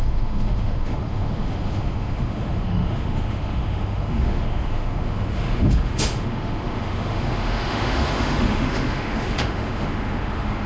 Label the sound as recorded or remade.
remade